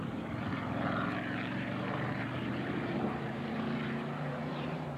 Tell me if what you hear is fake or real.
fake